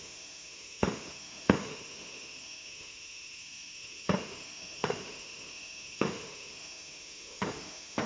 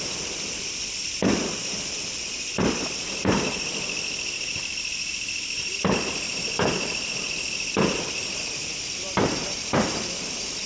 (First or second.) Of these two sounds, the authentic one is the second